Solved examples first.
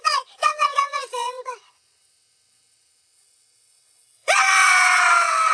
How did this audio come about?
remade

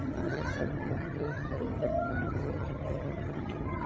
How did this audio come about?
remade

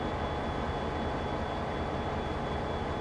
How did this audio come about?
recorded